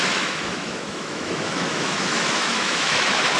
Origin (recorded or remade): remade